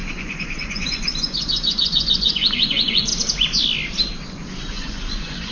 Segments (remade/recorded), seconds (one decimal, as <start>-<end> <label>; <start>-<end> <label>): 0.0-3.1 remade; 3.1-4.3 recorded; 4.3-5.5 remade